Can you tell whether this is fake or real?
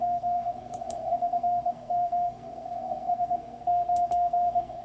fake